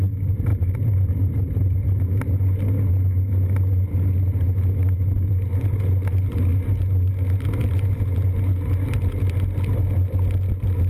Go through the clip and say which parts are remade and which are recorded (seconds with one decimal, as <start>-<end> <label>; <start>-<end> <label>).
0.0-0.5 recorded; 0.5-2.0 remade; 2.0-10.9 recorded